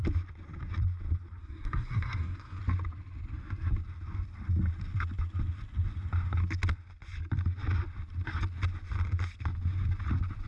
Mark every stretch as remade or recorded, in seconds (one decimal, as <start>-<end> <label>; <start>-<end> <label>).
0.0-1.4 recorded; 1.4-2.6 remade; 2.6-10.5 recorded